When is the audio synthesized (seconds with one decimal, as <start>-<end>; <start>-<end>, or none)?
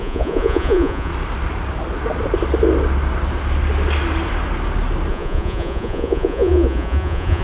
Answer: 0.0-1.1; 5.1-7.4